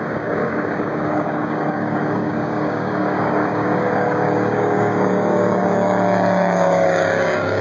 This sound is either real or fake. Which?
fake